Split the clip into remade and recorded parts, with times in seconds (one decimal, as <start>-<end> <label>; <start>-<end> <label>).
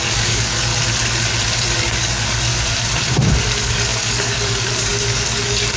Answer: 0.0-0.7 remade; 0.7-1.8 recorded; 1.8-2.5 remade; 2.5-3.3 recorded; 3.3-5.8 remade